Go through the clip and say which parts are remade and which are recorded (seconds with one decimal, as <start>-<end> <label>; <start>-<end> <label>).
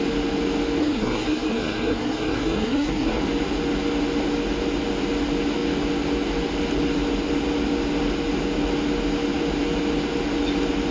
0.0-0.8 recorded; 0.8-3.2 remade; 3.2-10.9 recorded